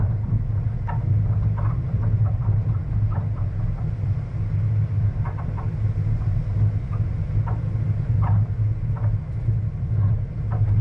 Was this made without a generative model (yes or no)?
yes